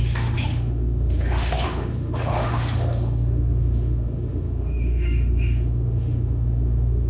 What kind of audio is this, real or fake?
fake